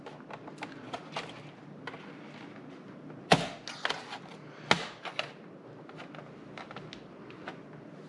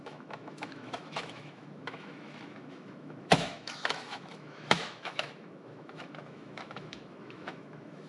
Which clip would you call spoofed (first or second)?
second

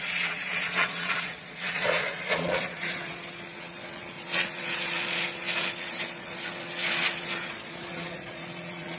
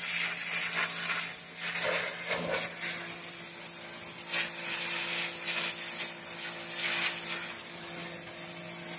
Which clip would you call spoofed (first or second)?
first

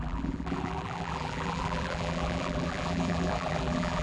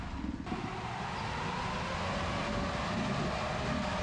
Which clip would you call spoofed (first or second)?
first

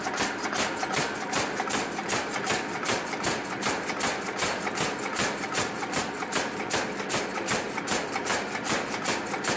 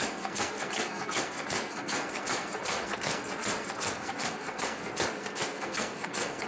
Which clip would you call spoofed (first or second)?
second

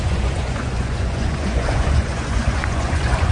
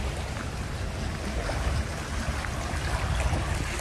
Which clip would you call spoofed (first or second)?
first